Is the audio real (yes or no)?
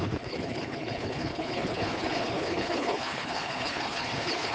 no